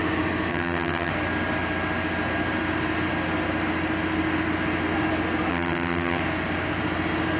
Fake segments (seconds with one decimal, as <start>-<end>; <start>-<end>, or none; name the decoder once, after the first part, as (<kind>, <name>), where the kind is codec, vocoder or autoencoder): 0.5-1.1 (vocoder, HiFi-GAN); 5.5-6.2